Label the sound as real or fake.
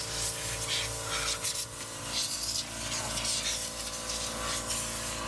real